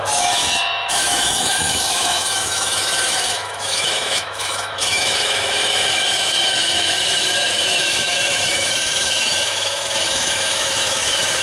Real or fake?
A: fake